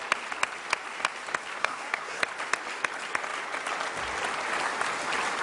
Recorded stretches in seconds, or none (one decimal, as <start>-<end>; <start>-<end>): 0.0-1.6; 2.2-5.4